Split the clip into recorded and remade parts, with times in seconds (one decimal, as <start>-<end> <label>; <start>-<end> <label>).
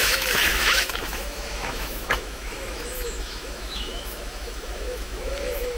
0.0-5.8 remade